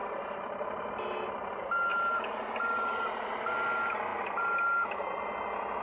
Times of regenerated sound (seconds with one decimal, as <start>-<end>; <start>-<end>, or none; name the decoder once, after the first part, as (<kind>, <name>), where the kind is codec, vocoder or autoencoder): 0.0-0.9 (vocoder, BigVGAN v2); 1.9-3.3